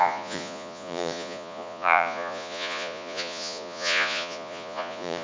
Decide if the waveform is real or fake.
fake